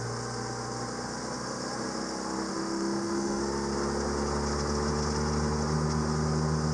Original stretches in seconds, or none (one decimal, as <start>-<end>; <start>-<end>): 0.0-2.5; 3.4-6.7